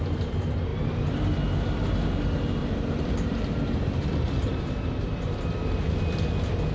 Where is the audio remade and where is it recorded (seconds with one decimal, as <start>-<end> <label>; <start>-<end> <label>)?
0.0-2.6 recorded; 2.6-5.7 remade; 5.7-6.7 recorded